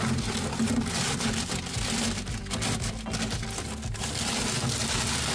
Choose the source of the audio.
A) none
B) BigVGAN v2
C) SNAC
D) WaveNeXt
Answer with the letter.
A